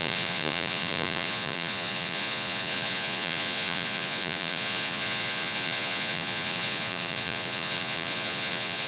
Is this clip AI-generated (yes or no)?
yes